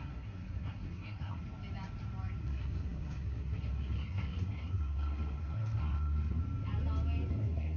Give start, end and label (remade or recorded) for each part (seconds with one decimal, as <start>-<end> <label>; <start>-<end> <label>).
0.0-1.4 remade; 1.4-2.4 recorded; 2.4-6.4 remade; 6.4-7.3 recorded; 7.3-7.8 remade